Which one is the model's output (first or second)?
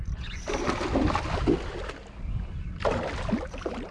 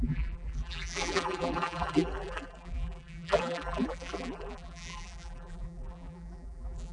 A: second